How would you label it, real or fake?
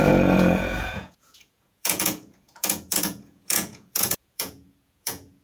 fake